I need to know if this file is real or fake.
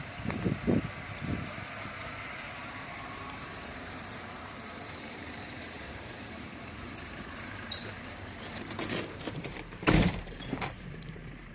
fake